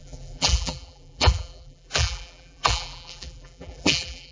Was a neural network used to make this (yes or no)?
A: yes